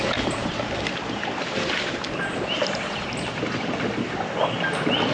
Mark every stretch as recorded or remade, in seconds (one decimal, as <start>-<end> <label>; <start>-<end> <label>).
0.0-5.1 recorded